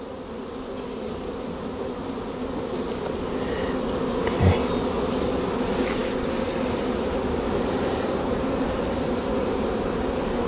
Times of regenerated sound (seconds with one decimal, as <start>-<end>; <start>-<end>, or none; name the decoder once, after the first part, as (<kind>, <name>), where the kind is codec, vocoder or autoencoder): none